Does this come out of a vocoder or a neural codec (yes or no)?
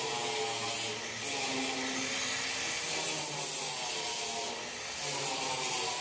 no